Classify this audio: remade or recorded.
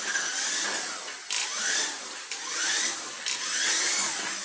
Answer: recorded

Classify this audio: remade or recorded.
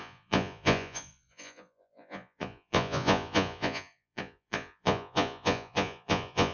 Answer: remade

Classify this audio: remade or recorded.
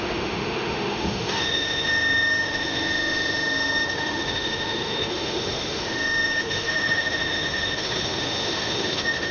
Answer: remade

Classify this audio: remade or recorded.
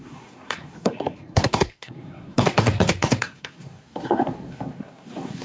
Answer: remade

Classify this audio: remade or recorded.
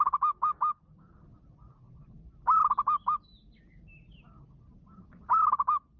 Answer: recorded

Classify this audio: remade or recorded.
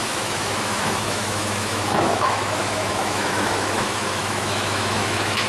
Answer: remade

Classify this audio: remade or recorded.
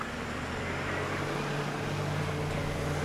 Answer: recorded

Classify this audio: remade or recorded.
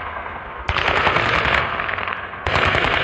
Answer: remade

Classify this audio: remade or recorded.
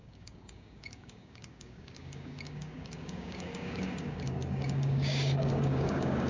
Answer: remade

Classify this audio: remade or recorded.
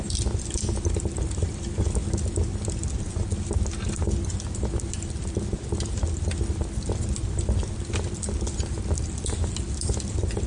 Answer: recorded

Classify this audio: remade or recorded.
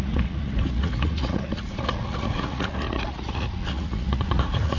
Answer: remade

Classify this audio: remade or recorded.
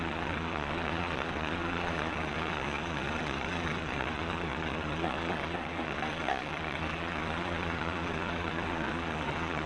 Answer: remade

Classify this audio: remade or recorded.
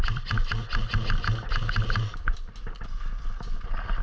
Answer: recorded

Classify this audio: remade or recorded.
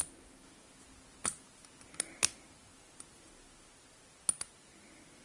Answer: recorded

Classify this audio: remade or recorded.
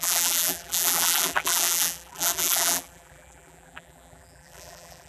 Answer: remade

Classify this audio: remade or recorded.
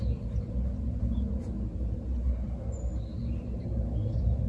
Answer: recorded